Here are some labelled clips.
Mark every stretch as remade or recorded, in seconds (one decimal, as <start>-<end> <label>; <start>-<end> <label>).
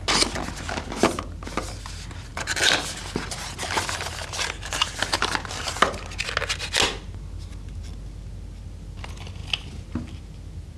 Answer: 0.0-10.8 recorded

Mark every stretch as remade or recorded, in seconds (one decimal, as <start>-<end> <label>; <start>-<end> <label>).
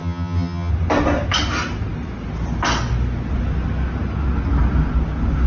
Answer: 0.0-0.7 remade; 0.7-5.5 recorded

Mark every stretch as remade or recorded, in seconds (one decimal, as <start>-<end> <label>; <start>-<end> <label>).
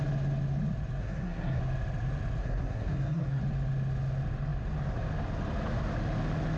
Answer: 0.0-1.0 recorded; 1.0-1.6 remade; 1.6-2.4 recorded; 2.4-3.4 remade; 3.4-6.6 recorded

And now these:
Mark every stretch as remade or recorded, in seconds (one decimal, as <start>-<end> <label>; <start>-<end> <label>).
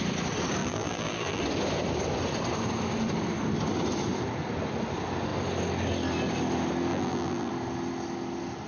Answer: 0.0-0.6 recorded; 0.6-1.4 remade; 1.4-6.9 recorded; 6.9-7.5 remade; 7.5-8.7 recorded